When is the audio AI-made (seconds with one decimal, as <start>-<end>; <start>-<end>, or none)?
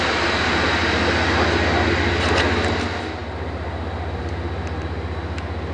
none